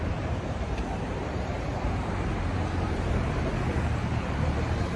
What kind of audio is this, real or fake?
fake